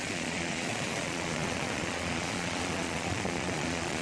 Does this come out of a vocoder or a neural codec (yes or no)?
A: yes